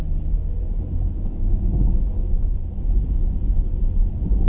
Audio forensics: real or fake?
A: real